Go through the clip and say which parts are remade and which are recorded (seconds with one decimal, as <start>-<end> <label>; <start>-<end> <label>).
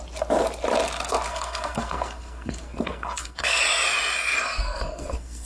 0.0-1.3 recorded; 1.3-3.6 remade; 3.6-4.5 recorded; 4.5-5.5 remade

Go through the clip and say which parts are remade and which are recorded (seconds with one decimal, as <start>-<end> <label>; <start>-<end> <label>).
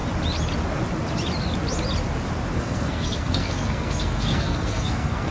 0.0-2.6 recorded; 2.6-5.3 remade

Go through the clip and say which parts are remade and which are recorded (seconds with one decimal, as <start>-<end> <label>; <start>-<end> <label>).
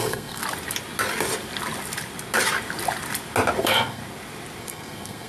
0.0-0.4 remade; 0.4-3.6 recorded; 3.6-4.0 remade; 4.0-4.6 recorded; 4.6-5.3 remade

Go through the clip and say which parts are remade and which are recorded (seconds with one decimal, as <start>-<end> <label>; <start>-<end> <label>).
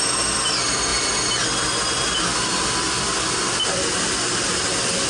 0.0-5.1 recorded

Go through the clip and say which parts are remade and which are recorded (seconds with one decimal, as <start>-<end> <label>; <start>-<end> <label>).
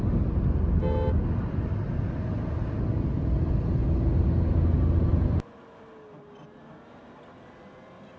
0.0-8.2 recorded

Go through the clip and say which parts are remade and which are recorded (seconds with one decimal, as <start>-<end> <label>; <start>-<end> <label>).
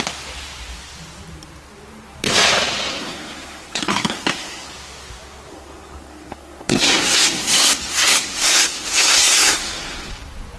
0.0-2.9 recorded; 2.9-4.7 remade; 4.7-5.5 recorded; 5.5-10.1 remade; 10.1-10.6 recorded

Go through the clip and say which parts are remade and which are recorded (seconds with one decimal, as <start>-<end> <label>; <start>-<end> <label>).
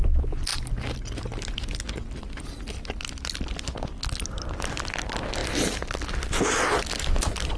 0.0-7.6 recorded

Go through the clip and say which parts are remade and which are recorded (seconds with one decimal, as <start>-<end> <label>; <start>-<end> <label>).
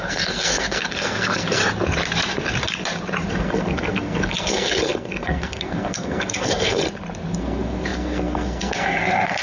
0.0-1.6 remade; 1.6-3.3 recorded; 3.3-6.8 remade; 6.8-7.4 recorded; 7.4-9.4 remade